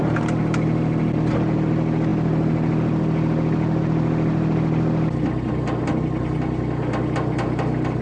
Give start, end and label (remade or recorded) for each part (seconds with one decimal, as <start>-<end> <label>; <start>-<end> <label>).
0.0-8.0 recorded